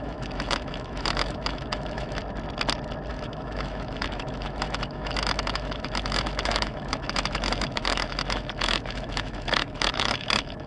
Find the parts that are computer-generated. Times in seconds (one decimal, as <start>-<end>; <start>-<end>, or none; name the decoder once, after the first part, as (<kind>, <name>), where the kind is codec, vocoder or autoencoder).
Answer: 0.0-2.2 (autoencoder, DAC-VAE); 3.1-10.7

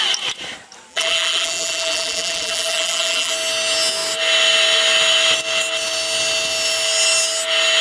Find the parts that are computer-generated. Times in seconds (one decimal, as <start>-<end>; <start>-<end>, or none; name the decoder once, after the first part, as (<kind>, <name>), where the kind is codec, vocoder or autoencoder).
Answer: 0.9-3.3 (vocoder, BigVGAN v2)

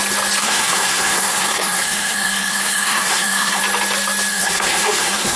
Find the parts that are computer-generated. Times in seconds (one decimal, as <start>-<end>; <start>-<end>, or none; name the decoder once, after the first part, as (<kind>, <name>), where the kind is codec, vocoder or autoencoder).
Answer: 0.4-3.6 (codec, SNAC); 4.3-5.4